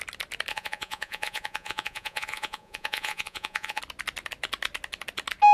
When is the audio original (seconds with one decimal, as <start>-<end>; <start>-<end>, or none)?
0.0-0.5; 3.8-5.5